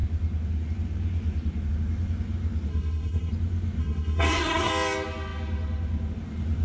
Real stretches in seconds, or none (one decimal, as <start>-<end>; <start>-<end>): 0.0-2.7; 3.3-3.8; 4.7-6.6